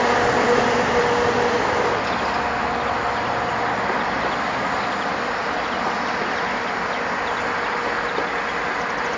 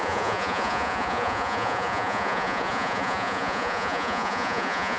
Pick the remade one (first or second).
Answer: second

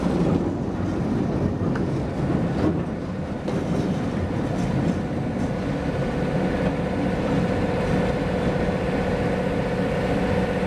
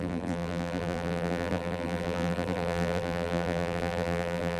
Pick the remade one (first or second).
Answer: second